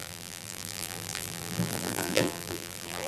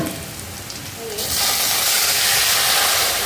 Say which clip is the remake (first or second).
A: first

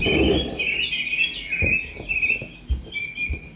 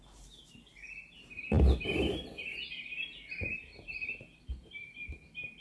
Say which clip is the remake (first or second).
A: second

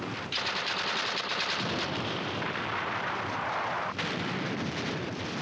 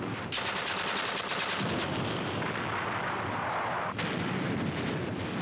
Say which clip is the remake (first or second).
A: first